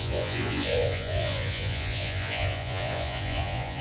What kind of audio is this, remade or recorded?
remade